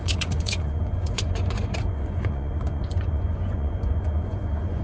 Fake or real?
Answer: fake